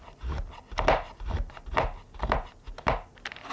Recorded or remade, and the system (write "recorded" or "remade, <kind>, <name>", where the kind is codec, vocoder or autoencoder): recorded